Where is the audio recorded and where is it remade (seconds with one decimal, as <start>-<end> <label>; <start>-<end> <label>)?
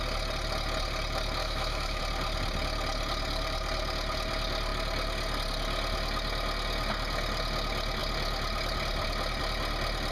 0.0-1.4 recorded; 1.4-2.0 remade; 2.0-10.1 recorded